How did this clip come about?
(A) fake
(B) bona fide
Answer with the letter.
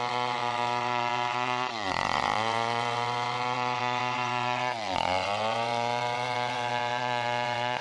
A